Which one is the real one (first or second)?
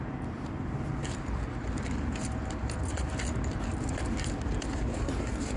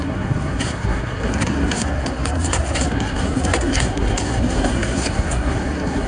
first